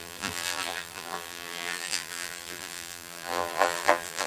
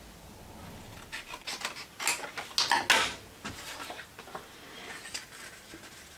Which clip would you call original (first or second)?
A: second